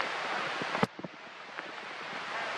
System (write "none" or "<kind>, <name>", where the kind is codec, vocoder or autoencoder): none